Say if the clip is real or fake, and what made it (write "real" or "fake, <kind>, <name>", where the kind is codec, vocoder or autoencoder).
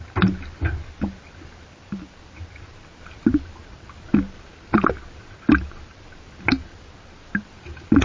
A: real